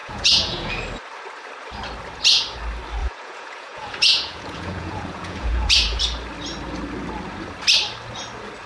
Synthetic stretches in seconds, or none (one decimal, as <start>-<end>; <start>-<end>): 0.0-0.7; 3.0-6.0